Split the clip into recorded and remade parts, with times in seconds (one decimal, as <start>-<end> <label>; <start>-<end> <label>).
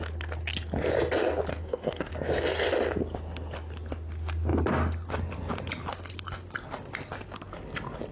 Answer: 0.0-1.5 recorded; 1.5-2.1 remade; 2.1-8.1 recorded